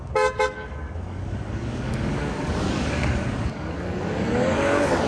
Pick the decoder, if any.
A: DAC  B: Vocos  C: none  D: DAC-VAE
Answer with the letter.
A